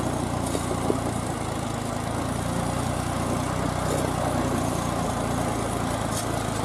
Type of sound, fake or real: real